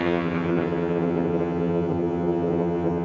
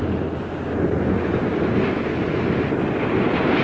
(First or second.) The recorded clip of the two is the second